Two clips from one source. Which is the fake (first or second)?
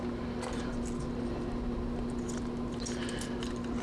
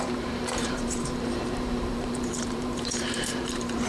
second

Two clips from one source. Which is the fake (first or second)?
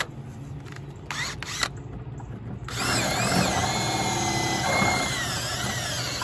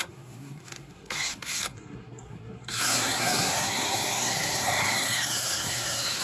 second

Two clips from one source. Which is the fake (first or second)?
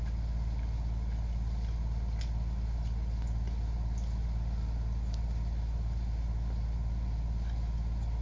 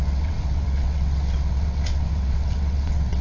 second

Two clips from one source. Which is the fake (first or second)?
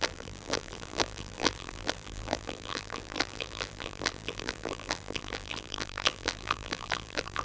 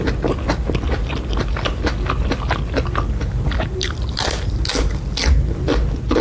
first